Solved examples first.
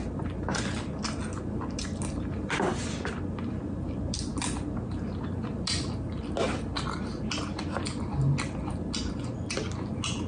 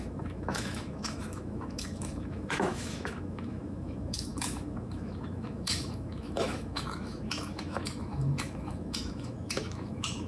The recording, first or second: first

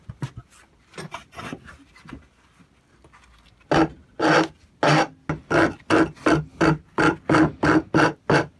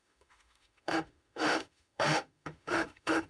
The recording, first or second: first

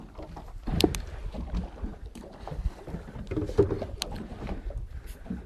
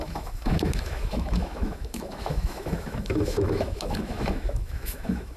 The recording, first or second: first